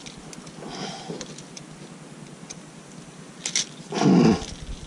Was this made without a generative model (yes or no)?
yes